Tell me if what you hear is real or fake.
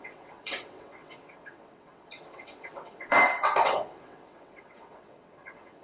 fake